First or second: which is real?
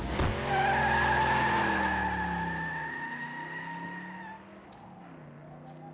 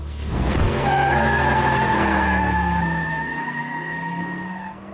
first